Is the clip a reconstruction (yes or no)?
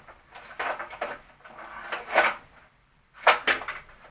no